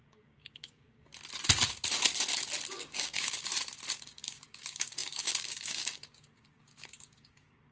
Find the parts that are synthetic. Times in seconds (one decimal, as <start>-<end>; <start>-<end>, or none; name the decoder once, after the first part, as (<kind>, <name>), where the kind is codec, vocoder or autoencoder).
0.0-1.1 (codec, DAC); 2.7-3.5; 4.0-7.7